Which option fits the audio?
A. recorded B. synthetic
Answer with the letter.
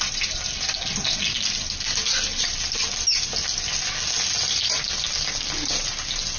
A